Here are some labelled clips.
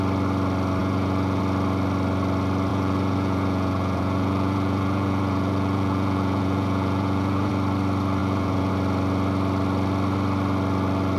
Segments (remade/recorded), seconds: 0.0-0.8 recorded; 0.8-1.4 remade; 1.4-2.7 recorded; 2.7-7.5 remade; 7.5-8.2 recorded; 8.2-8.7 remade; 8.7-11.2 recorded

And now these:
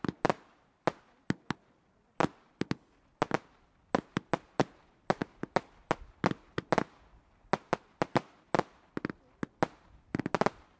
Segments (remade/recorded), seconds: 0.0-10.8 recorded

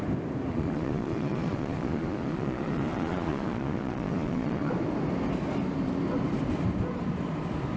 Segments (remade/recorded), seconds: 0.0-0.5 recorded; 0.5-4.7 remade; 4.7-7.8 recorded

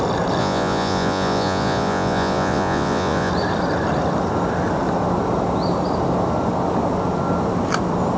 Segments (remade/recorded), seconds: 0.0-0.4 recorded; 0.4-3.3 remade; 3.3-8.2 recorded